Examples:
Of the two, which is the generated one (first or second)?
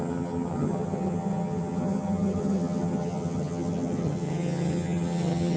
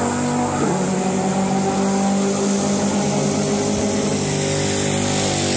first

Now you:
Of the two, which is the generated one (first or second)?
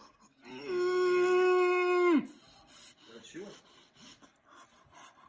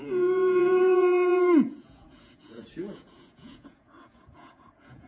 second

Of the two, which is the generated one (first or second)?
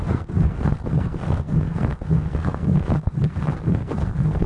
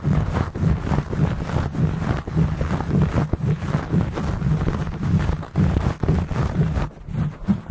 first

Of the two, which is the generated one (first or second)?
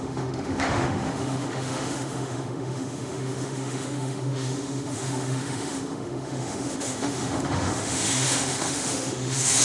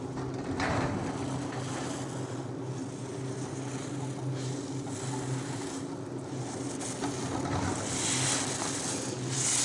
first